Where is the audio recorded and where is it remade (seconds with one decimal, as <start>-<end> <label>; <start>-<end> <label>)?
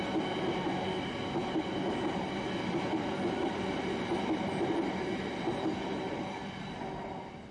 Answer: 0.0-7.5 recorded